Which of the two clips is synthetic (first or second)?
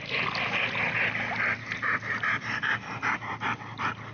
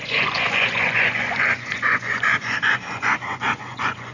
second